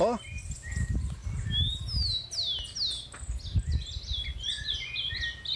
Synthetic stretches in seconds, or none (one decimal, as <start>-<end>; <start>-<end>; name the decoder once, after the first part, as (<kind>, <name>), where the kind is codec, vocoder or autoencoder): 4.3-5.1 (vocoder, Vocos)